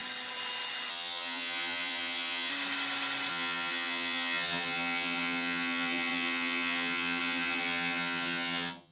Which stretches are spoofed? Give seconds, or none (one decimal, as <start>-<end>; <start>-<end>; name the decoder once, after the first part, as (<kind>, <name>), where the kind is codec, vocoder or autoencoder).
0.9-2.5 (vocoder, HiFi-GAN); 3.3-8.9